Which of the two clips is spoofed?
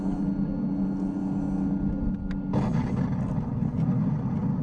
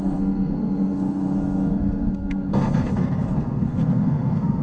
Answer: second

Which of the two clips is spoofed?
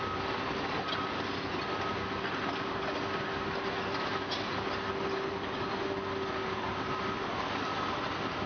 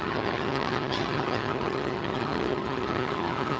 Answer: second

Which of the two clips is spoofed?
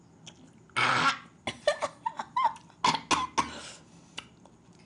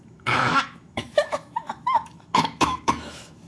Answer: second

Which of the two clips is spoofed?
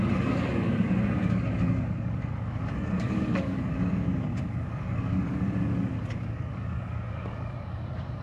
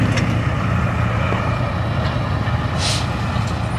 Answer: first